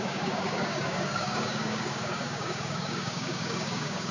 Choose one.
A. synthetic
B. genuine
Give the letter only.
A